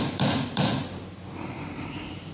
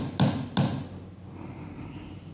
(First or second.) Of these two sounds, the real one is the second